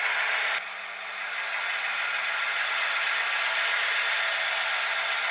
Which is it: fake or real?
real